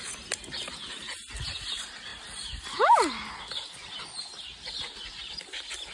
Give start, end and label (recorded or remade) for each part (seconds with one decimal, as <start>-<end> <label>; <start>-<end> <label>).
0.0-5.9 recorded